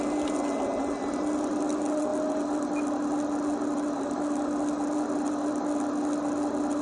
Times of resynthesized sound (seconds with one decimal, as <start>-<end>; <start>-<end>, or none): none